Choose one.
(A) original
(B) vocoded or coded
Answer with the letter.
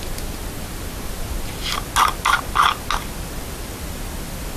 A